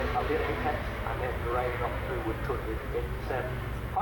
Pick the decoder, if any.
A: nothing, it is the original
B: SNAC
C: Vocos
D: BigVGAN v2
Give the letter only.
D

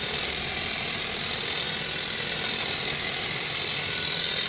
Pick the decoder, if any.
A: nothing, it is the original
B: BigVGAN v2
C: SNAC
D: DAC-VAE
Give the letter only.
A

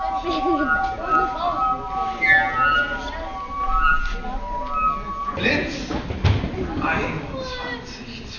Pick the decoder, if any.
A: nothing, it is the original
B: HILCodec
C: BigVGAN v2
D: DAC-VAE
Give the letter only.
A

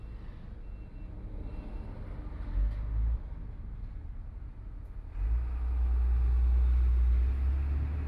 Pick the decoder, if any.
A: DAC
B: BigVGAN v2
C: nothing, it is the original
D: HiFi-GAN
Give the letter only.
C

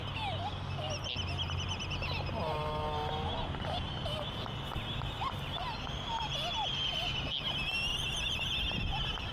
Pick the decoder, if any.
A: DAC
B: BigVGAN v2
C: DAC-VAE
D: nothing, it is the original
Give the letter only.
D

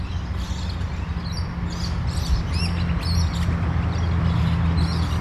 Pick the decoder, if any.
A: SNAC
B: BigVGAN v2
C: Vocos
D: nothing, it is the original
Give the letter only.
D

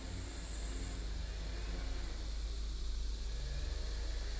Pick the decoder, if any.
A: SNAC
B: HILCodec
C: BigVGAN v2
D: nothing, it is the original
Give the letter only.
D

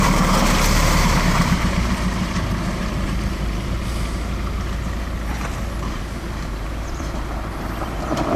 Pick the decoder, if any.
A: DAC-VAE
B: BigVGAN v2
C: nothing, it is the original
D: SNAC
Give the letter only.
B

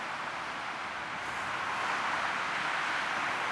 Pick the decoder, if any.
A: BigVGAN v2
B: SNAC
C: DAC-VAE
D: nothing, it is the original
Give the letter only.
D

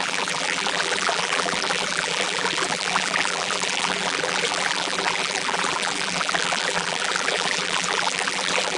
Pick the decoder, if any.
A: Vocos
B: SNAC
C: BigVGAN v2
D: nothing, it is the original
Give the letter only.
C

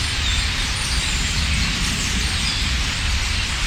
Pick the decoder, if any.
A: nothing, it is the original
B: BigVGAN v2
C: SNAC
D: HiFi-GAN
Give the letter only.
B